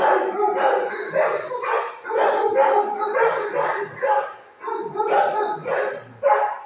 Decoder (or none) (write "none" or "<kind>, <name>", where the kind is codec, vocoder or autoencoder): none